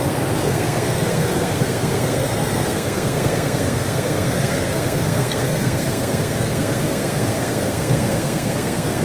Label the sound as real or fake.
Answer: fake